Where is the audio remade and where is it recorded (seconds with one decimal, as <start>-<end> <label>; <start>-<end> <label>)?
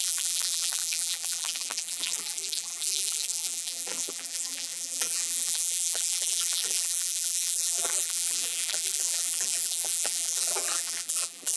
0.0-11.6 remade